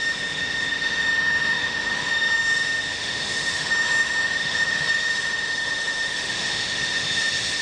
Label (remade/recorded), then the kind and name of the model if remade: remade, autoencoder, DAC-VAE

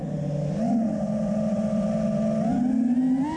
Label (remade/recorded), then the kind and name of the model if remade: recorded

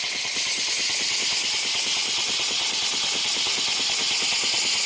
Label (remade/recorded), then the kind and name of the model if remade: recorded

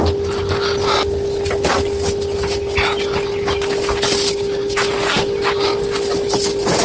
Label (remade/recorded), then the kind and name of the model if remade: recorded